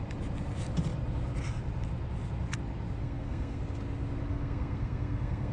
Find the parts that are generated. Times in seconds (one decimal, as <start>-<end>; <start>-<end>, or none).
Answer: 3.0-3.6; 4.3-5.5